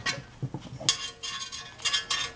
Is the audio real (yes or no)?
yes